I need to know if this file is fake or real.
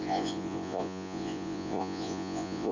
fake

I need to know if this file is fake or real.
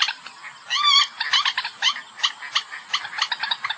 real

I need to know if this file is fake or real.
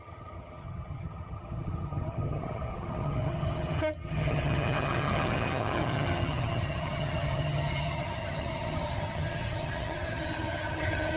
fake